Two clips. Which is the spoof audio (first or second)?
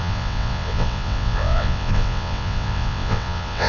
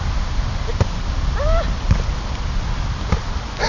first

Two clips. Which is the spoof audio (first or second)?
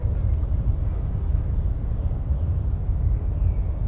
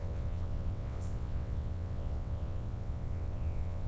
second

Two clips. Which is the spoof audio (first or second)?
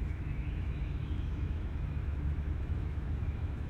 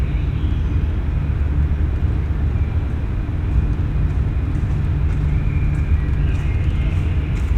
first